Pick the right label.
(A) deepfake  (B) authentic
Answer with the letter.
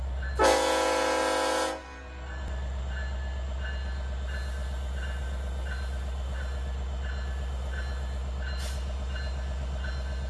B